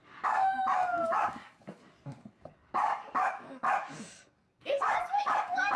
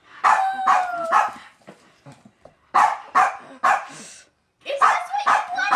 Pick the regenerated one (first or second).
first